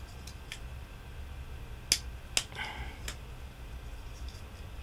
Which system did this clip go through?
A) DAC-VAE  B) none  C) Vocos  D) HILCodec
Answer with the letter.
B